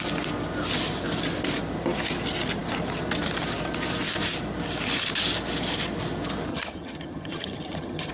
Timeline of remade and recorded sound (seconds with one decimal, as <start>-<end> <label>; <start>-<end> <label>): 0.0-6.5 recorded; 6.5-8.1 remade